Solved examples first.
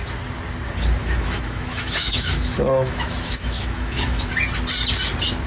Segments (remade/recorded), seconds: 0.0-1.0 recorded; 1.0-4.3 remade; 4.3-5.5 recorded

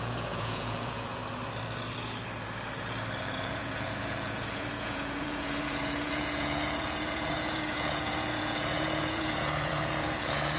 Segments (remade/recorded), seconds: 0.0-1.2 remade; 1.2-3.2 recorded; 3.2-10.6 remade

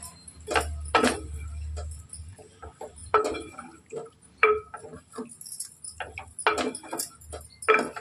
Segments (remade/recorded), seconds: 0.0-3.0 recorded; 3.0-4.5 remade; 4.5-8.0 recorded

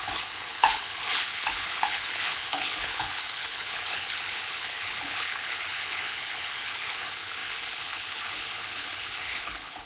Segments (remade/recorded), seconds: 0.0-9.9 remade

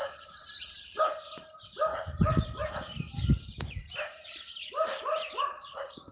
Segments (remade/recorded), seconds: 0.0-1.0 remade; 1.0-1.9 recorded; 1.9-2.7 remade; 2.7-3.5 recorded; 3.5-6.1 remade

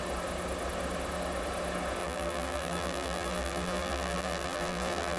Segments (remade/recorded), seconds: 0.0-2.0 recorded; 2.0-5.2 remade

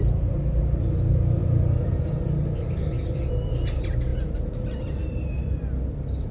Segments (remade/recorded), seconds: 0.0-6.3 recorded